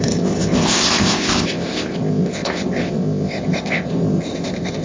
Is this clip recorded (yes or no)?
no